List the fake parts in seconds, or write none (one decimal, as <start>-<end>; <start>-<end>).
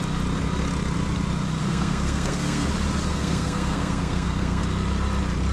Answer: 1.6-2.7; 3.1-4.6